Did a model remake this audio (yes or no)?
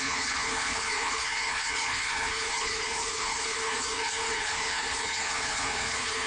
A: yes